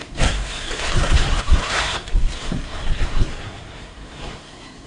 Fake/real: fake